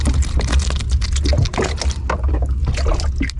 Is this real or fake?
real